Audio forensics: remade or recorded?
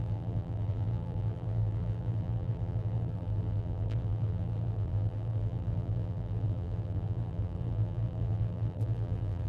remade